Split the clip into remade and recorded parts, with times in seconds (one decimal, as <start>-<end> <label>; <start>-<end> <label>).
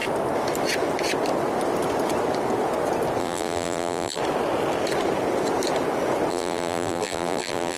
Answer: 0.0-3.2 recorded; 3.2-4.2 remade; 4.2-6.3 recorded; 6.3-7.8 remade